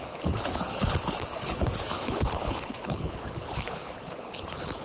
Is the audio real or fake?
fake